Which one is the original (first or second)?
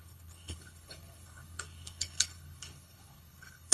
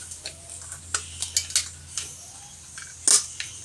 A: second